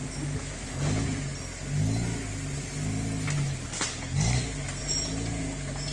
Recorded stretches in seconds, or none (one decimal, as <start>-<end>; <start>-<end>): 0.7-5.9